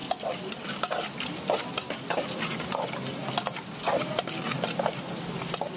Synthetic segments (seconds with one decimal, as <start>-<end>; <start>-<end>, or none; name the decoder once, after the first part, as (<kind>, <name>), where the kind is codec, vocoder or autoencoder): none

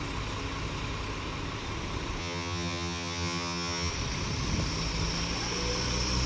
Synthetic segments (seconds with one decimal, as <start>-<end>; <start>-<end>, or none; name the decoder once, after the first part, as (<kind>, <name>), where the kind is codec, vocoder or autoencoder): 2.2-3.9 (vocoder, HiFi-GAN)

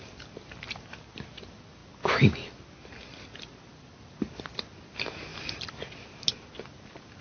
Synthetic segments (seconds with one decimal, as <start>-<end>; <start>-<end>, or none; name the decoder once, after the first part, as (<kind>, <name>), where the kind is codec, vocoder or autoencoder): none